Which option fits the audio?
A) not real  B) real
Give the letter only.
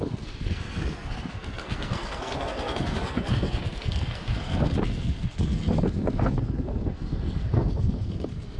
A